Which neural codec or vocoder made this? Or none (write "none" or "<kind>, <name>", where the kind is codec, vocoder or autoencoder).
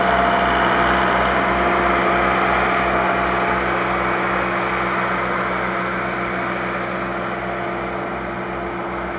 none